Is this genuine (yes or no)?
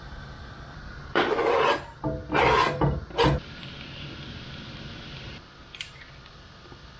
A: yes